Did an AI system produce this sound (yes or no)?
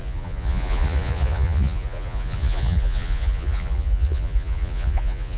yes